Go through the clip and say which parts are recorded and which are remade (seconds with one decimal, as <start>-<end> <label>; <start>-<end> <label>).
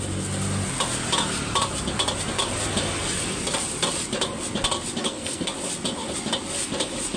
0.0-5.0 recorded; 5.0-5.5 remade; 5.5-7.2 recorded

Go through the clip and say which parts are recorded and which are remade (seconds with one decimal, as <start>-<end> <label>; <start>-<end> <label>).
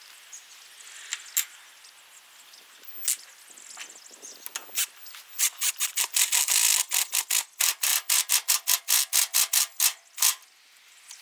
0.0-11.2 recorded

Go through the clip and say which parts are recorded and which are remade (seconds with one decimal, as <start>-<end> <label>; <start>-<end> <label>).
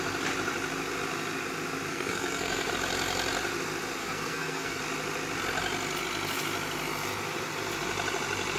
0.0-1.9 recorded; 1.9-2.7 remade; 2.7-4.0 recorded; 4.0-4.8 remade; 4.8-8.6 recorded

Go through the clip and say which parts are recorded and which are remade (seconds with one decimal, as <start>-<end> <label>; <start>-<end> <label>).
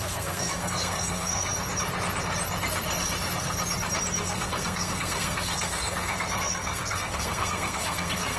0.0-1.5 remade; 1.5-4.2 recorded; 4.2-8.4 remade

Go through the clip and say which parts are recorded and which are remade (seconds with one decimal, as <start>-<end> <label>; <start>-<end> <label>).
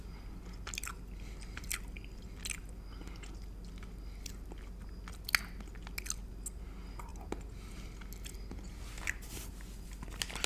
0.0-10.5 recorded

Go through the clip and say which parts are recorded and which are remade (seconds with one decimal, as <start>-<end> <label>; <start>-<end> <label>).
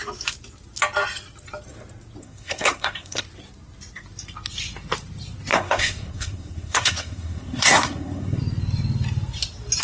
0.0-2.2 recorded; 2.2-3.2 remade; 3.2-5.5 recorded; 5.5-8.4 remade; 8.4-9.8 recorded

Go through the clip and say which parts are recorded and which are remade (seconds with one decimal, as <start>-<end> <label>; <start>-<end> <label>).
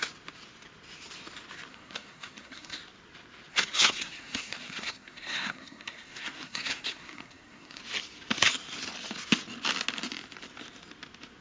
0.0-1.7 recorded; 1.7-2.8 remade; 2.8-3.5 recorded; 3.5-7.8 remade; 7.8-11.4 recorded